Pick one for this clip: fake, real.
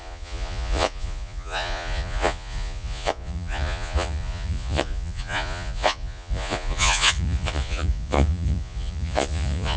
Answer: fake